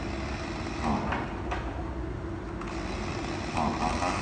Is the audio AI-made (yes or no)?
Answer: no